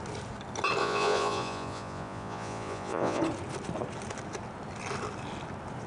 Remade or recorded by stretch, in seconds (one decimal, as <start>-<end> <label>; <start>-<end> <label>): 0.0-0.8 recorded; 0.8-3.2 remade; 3.2-5.9 recorded